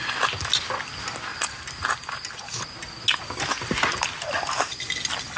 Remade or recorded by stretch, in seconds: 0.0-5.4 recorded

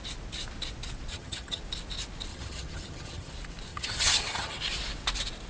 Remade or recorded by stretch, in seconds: 0.0-1.1 recorded; 1.1-1.6 remade; 1.6-2.3 recorded; 2.3-3.3 remade; 3.3-3.7 recorded; 3.7-4.6 remade; 4.6-5.5 recorded